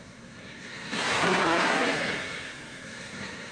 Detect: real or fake fake